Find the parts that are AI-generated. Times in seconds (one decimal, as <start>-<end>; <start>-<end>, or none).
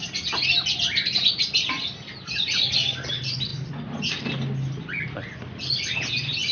none